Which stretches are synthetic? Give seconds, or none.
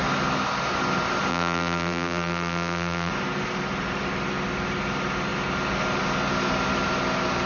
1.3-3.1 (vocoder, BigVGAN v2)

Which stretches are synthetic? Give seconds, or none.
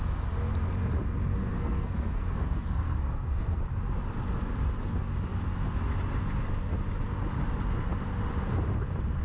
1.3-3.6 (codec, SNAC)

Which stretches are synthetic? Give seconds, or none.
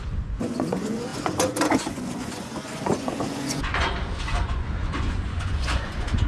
0.0-6.3 (vocoder, Vocos)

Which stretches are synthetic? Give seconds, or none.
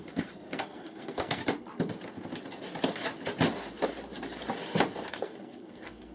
0.0-1.4 (codec, SNAC); 5.1-6.1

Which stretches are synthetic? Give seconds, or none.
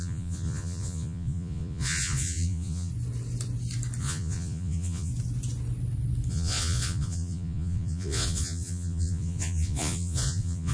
0.0-2.9 (vocoder, Vocos); 4.0-5.1; 6.3-10.7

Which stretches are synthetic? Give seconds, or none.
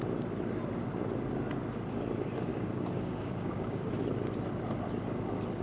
2.5-3.9 (codec, DAC)